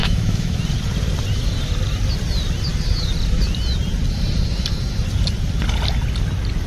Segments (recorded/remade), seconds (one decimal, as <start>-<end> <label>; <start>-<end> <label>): 0.0-0.6 remade; 0.6-6.7 recorded